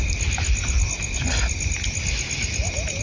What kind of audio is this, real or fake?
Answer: real